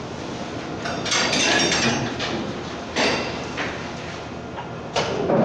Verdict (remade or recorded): recorded